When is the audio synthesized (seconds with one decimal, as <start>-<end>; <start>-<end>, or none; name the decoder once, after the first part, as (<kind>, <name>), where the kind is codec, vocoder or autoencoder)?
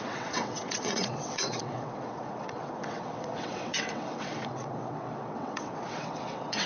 0.0-6.7 (vocoder, WaveNeXt)